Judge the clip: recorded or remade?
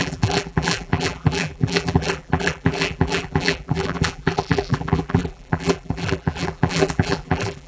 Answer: remade